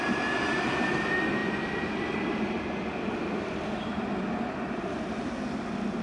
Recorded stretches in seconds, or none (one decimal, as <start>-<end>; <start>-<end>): 0.0-1.4; 5.0-6.0